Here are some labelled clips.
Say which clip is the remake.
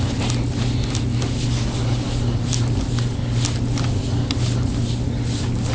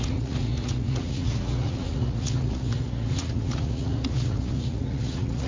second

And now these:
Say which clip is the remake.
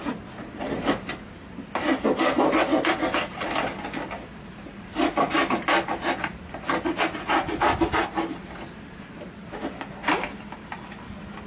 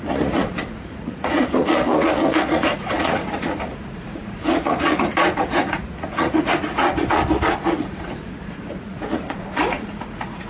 second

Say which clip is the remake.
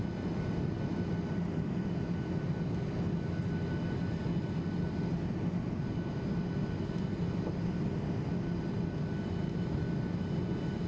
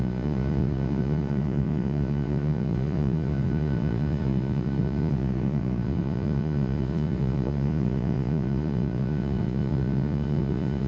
second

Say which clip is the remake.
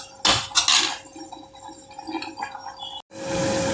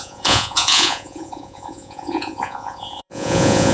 second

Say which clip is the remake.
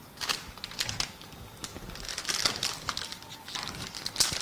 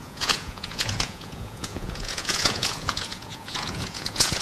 second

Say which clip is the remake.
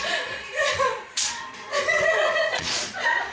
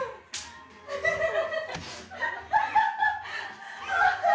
first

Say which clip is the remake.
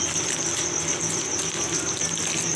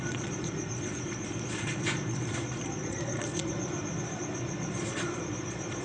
second